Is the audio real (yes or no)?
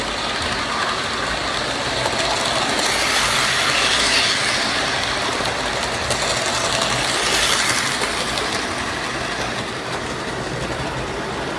yes